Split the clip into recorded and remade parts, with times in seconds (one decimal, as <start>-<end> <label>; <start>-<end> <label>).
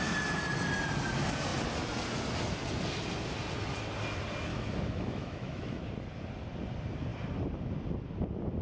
0.0-4.5 recorded; 4.5-5.8 remade; 5.8-8.6 recorded